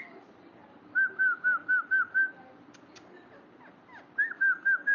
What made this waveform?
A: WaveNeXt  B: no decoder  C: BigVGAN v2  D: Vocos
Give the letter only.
B